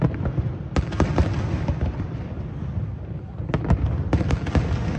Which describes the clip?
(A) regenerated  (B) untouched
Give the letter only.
B